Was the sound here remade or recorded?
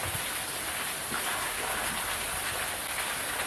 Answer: recorded